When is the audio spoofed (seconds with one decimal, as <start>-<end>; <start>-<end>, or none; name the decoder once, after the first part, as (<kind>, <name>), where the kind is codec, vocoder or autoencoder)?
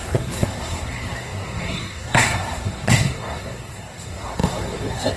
0.0-5.2 (codec, SNAC)